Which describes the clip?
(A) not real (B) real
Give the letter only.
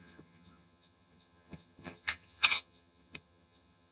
A